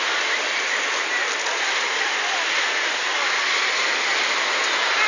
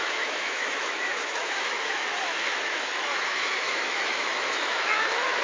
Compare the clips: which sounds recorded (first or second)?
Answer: first